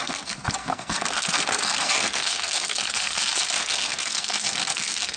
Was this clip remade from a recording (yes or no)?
yes